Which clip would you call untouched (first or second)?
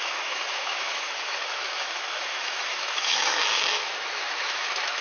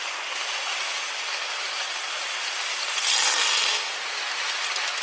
second